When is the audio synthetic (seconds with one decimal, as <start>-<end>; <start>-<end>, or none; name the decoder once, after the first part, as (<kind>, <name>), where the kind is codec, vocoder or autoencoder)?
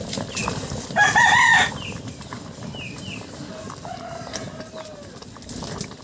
none